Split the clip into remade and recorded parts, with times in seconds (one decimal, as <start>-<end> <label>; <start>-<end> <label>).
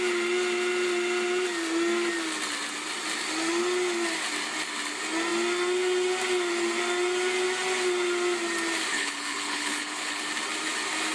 0.0-8.9 recorded; 8.9-10.2 remade; 10.2-11.1 recorded